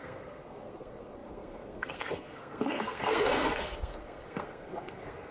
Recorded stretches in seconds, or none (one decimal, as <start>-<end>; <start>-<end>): none